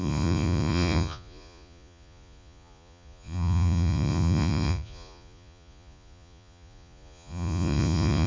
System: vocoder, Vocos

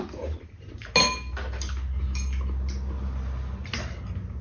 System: none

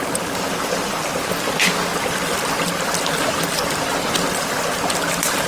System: none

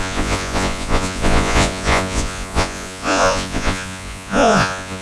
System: vocoder, Vocos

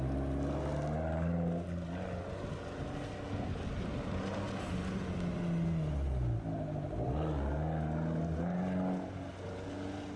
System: none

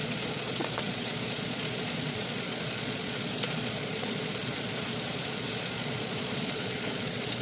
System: vocoder, Vocos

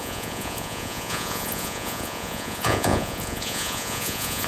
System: vocoder, Vocos